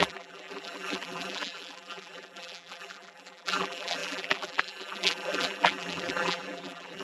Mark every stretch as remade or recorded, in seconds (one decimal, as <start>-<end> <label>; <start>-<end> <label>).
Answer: 0.0-7.0 remade